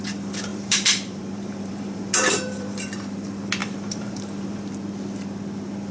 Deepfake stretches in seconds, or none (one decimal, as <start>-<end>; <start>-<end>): 0.5-2.8; 3.6-4.7